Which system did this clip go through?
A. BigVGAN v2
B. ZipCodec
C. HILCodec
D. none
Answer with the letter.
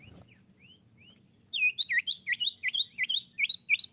D